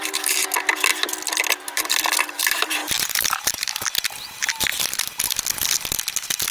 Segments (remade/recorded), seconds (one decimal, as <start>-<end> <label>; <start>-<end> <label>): 0.0-2.8 recorded; 2.8-3.7 remade; 3.7-4.7 recorded; 4.7-5.2 remade; 5.2-6.5 recorded